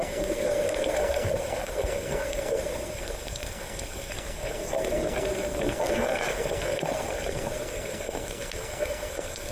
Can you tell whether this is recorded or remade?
remade